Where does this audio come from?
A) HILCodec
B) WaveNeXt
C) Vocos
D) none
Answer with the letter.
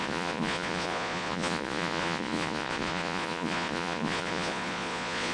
C